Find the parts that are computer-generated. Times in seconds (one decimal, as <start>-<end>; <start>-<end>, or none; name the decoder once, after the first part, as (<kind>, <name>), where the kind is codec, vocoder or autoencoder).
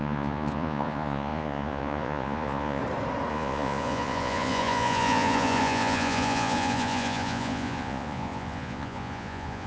0.0-2.8 (vocoder, Vocos); 3.3-9.7